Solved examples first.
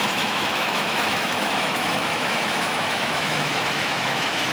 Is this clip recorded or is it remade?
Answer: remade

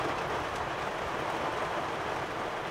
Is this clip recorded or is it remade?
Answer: recorded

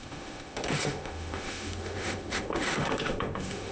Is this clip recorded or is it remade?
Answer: remade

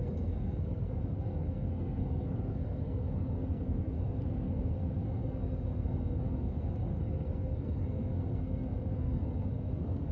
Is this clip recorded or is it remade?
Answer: remade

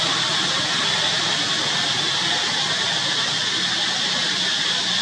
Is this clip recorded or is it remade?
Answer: recorded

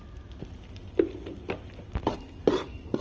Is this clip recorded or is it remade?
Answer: recorded